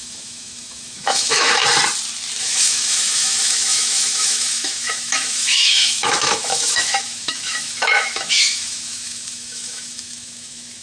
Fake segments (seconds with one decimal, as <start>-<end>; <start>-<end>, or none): 0.0-1.6; 2.4-10.8